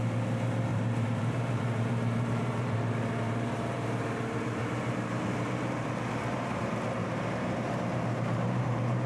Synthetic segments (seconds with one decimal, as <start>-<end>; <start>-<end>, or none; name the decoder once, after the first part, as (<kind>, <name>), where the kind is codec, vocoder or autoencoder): 0.7-5.5 (vocoder, BigVGAN v2); 7.0-9.1